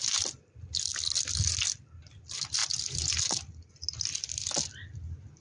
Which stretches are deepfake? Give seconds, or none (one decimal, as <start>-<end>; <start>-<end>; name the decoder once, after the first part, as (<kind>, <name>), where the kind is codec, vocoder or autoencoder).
none